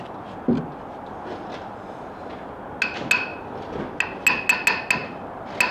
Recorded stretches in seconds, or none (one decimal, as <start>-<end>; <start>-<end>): 0.0-3.3; 3.8-5.7